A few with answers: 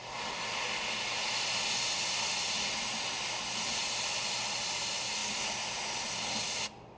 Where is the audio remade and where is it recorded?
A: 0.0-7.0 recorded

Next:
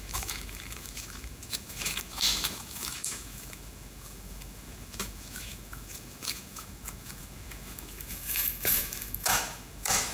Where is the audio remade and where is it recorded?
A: 0.0-10.1 remade

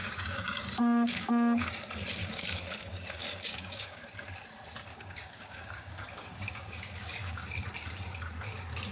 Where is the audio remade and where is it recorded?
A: 0.0-1.7 remade; 1.7-2.2 recorded; 2.2-4.0 remade; 4.0-4.9 recorded; 4.9-7.5 remade; 7.5-8.9 recorded

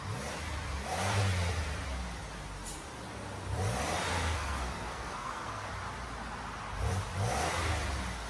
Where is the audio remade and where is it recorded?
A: 0.0-4.1 recorded; 4.1-5.7 remade; 5.7-8.3 recorded